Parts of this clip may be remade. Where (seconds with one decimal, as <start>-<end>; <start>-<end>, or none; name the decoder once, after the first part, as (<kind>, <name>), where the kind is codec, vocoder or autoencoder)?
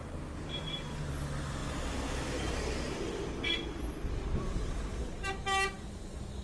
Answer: 0.0-1.1 (vocoder, BigVGAN v2); 1.6-2.9